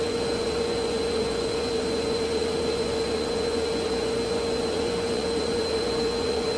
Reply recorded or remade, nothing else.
remade